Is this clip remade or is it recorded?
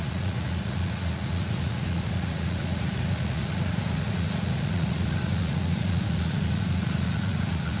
remade